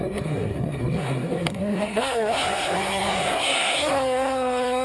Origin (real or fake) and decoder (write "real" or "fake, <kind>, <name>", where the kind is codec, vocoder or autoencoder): fake, codec, SNAC